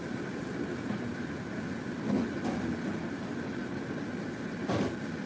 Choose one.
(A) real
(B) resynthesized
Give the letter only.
A